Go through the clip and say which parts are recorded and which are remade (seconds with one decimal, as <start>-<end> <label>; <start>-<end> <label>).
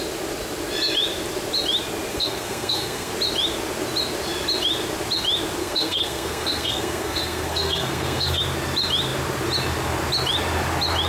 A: 0.0-2.1 recorded; 2.1-3.1 remade; 3.1-5.6 recorded; 5.6-8.4 remade; 8.4-11.1 recorded